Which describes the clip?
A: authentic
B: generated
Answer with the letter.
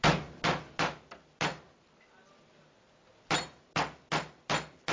A